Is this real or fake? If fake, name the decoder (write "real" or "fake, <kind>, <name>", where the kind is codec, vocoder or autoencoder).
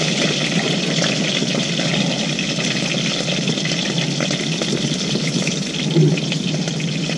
real